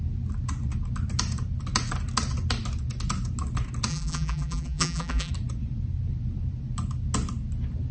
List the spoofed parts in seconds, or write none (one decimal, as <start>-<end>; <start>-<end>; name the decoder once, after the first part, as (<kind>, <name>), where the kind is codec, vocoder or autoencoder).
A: 3.9-5.3 (vocoder, BigVGAN v2)